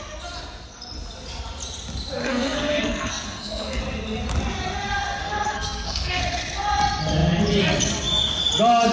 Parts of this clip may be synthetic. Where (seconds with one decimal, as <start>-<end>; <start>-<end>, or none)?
2.2-3.8; 5.2-6.2